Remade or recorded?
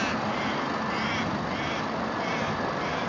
recorded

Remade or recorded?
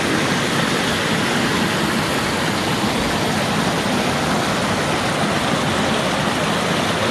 recorded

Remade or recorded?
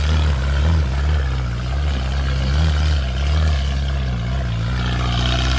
recorded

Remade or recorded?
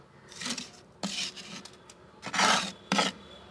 recorded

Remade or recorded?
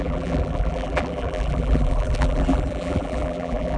remade